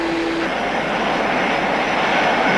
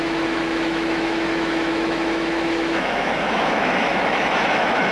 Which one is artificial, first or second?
second